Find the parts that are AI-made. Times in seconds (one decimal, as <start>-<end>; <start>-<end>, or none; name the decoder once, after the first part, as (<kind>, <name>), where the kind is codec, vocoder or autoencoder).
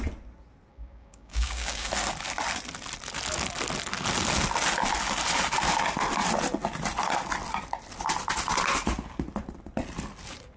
0.7-1.9 (codec, DAC)